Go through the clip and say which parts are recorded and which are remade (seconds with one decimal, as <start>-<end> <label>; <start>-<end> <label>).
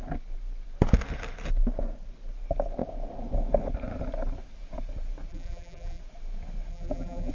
0.0-5.3 recorded; 5.3-6.0 remade; 6.0-6.7 recorded; 6.7-7.3 remade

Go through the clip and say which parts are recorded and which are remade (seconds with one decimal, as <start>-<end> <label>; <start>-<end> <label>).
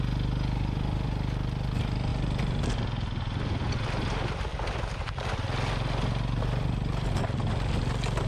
0.0-8.3 recorded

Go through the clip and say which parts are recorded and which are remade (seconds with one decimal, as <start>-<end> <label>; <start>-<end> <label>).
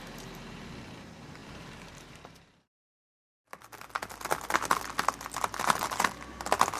0.0-1.4 recorded; 1.4-2.8 remade; 2.8-6.8 recorded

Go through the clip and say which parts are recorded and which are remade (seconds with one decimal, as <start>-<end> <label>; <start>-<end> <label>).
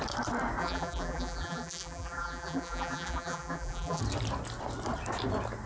0.0-0.6 recorded; 0.6-4.0 remade; 4.0-5.7 recorded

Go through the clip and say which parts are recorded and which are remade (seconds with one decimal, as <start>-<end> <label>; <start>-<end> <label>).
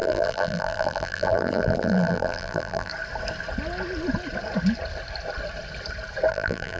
0.0-2.9 remade; 2.9-6.3 recorded; 6.3-6.8 remade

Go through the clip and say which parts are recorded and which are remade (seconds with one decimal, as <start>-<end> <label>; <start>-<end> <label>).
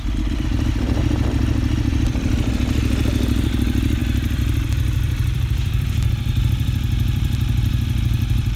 0.0-8.6 remade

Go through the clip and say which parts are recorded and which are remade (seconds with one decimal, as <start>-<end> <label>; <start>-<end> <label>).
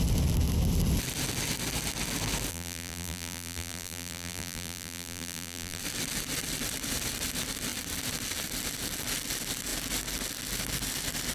0.0-2.5 recorded; 2.5-5.8 remade; 5.8-11.3 recorded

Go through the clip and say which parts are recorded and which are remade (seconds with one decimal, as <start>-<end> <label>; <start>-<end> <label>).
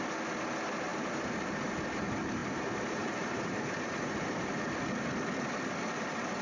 0.0-0.9 recorded; 0.9-1.7 remade; 1.7-2.4 recorded; 2.4-4.5 remade; 4.5-6.4 recorded